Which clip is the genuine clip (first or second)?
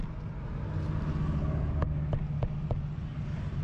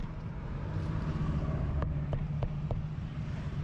first